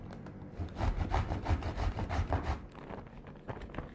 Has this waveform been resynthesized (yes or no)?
no